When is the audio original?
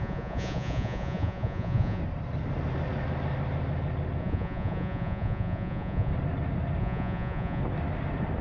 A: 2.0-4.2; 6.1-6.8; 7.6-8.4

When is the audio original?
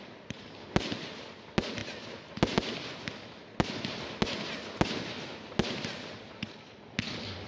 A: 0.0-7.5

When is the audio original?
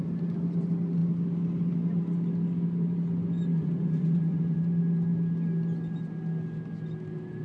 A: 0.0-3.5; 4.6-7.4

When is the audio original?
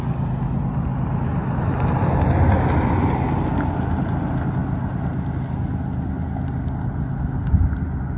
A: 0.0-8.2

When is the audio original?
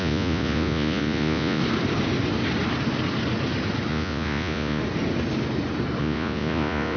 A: 1.6-3.9; 4.8-6.0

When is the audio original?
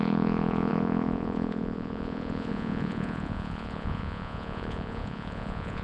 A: none